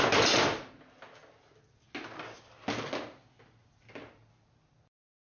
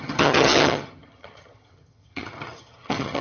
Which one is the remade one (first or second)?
second